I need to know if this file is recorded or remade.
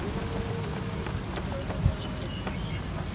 recorded